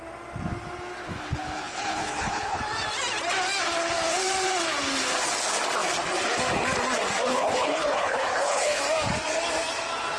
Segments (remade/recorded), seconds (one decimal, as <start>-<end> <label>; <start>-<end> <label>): 0.0-1.0 recorded; 1.0-2.6 remade; 2.6-7.3 recorded; 7.3-8.8 remade; 8.8-10.2 recorded